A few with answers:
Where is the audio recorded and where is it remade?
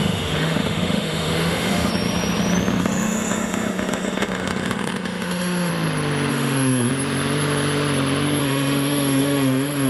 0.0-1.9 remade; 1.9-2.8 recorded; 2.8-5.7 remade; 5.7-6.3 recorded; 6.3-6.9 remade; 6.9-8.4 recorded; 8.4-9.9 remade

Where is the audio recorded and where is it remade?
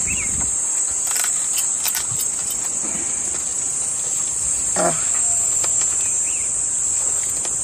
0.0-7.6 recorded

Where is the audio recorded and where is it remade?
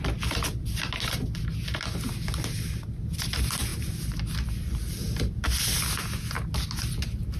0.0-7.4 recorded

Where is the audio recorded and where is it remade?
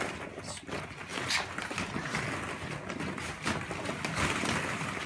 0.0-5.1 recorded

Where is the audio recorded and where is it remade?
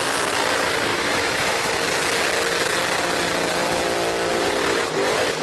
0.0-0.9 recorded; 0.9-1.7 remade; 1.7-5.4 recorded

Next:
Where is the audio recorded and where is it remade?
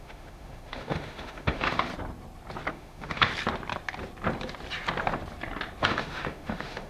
0.0-1.9 remade; 1.9-2.7 recorded; 2.7-3.3 remade; 3.3-5.8 recorded; 5.8-6.9 remade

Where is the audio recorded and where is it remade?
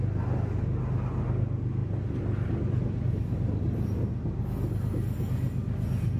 0.0-6.2 recorded